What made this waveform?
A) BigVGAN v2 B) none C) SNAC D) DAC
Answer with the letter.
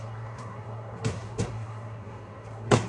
C